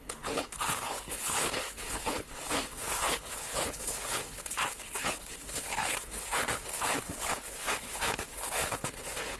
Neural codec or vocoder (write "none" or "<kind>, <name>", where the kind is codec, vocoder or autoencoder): codec, HILCodec